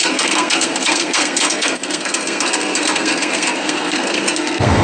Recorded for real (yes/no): no